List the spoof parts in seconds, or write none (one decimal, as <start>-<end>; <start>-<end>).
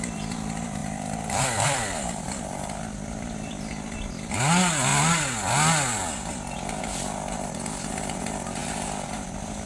0.8-3.7; 8.6-9.7